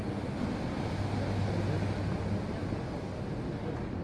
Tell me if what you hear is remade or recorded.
recorded